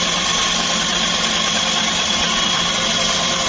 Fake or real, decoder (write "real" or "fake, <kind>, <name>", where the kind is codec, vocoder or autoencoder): real